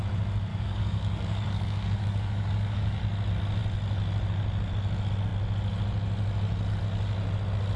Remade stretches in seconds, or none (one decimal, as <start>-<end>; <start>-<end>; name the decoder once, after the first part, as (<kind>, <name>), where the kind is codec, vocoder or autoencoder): 0.5-3.0 (codec, DAC)